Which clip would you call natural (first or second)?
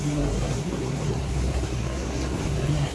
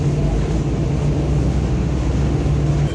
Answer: second